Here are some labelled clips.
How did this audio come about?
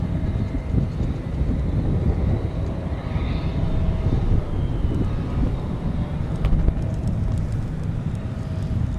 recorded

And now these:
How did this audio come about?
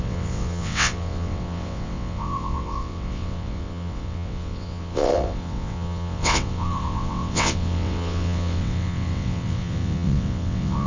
remade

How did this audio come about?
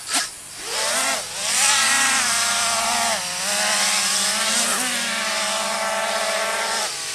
recorded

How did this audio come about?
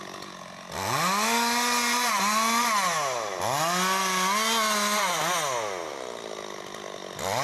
recorded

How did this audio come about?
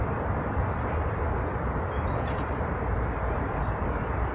remade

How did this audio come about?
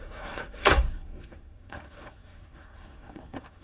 remade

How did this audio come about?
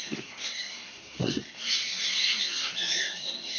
remade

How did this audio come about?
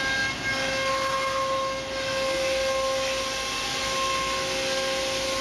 recorded